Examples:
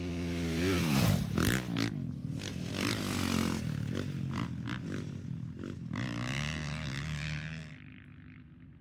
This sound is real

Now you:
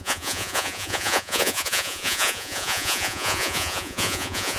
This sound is fake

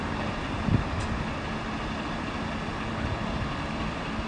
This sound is real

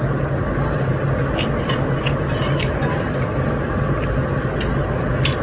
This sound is real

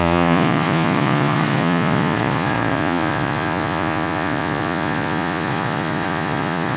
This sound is fake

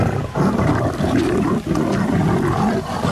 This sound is real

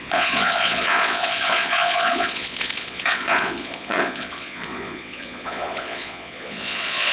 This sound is fake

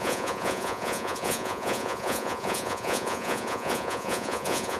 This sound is fake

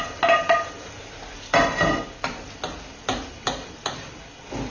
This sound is real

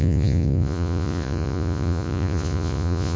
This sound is fake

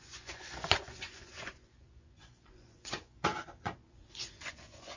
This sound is fake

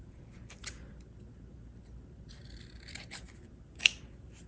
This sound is real